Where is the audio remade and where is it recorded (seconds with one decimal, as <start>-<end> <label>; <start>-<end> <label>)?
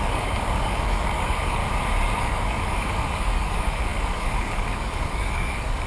0.0-1.6 remade; 1.6-2.2 recorded; 2.2-5.9 remade